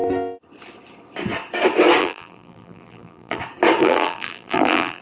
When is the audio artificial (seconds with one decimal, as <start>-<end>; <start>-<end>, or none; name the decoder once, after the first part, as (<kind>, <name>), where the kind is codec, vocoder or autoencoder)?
2.0-3.4 (vocoder, BigVGAN v2); 3.8-5.0